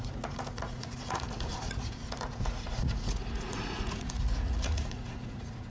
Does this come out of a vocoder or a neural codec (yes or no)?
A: yes